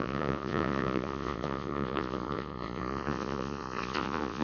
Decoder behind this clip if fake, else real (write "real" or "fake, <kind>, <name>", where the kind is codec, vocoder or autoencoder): fake, vocoder, Vocos